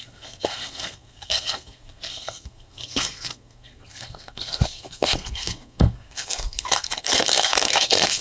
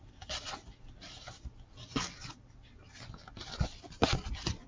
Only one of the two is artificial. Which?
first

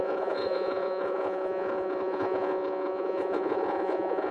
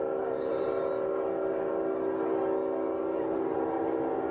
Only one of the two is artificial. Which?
first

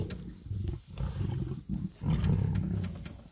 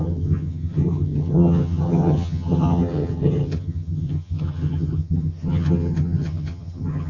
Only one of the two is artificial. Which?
second